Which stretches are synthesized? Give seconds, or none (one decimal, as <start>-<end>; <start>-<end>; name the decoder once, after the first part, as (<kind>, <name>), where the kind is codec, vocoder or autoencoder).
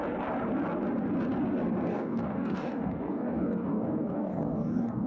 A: 1.9-5.1 (codec, DAC)